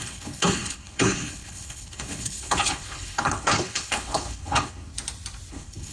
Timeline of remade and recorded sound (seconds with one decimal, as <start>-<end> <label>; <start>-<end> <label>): 0.0-4.9 remade; 4.9-5.5 recorded; 5.5-5.9 remade